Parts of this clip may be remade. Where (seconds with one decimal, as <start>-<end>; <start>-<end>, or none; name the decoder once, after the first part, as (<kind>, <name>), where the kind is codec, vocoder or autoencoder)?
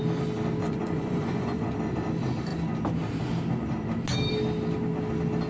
0.6-1.7 (vocoder, Vocos)